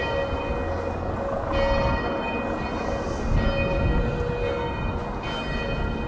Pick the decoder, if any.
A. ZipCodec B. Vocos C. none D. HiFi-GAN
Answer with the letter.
C